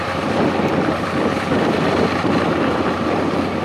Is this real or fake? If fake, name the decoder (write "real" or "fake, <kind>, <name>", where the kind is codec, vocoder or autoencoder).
fake, vocoder, BigVGAN v2